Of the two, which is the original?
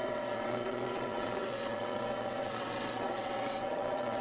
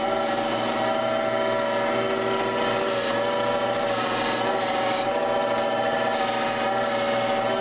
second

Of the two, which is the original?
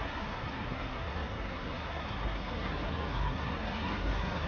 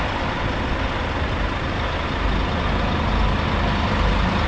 second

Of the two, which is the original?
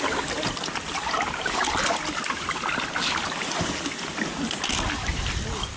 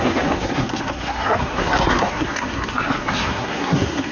first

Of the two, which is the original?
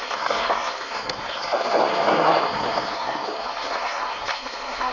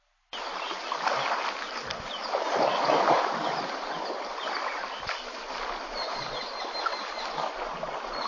second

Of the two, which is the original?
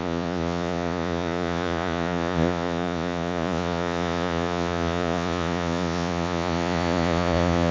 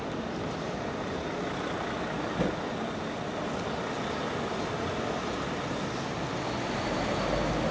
second